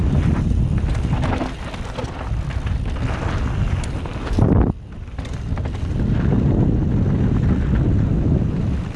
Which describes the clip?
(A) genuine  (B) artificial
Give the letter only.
A